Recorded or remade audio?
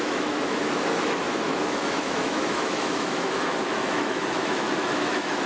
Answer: remade